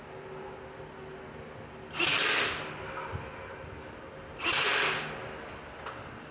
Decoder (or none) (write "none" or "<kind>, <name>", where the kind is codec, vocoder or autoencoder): none